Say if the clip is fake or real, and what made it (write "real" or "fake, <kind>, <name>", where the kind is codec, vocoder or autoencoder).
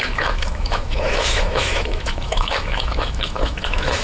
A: fake, autoencoder, DAC-VAE